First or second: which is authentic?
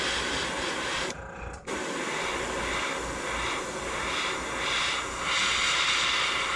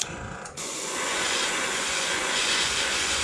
first